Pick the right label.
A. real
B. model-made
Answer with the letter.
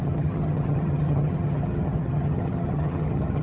B